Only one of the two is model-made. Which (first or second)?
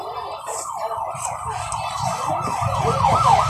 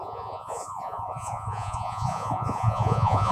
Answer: second